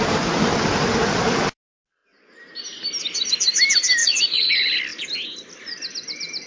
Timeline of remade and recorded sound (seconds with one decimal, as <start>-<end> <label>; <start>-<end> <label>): 0.0-4.0 recorded; 4.0-4.5 remade; 4.5-6.5 recorded